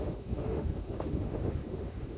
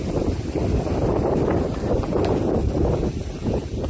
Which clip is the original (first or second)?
second